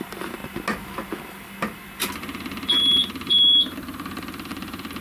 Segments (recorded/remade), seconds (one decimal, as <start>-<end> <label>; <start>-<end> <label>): 0.0-0.4 remade; 0.4-2.2 recorded; 2.2-5.0 remade